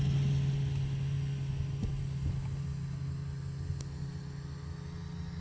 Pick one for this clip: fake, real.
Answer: real